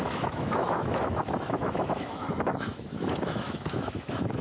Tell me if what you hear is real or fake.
fake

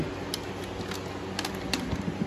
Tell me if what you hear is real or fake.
real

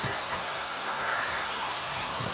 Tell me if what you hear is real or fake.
fake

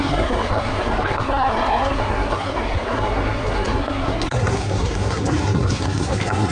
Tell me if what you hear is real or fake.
fake